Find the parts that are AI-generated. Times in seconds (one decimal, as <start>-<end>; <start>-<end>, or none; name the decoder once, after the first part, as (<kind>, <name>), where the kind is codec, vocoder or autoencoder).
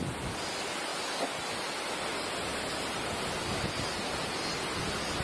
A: none